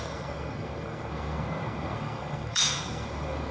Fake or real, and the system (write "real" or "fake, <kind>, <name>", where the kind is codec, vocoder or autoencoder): fake, codec, SNAC